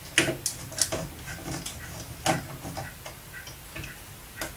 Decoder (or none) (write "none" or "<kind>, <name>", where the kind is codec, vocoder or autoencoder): none